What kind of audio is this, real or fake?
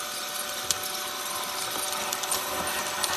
real